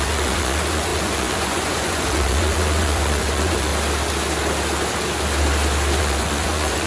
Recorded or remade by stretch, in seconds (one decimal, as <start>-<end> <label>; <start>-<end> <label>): 0.0-3.7 remade; 3.7-6.0 recorded; 6.0-6.9 remade